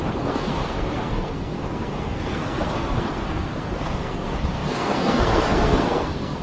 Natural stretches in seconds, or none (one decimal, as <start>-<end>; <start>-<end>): none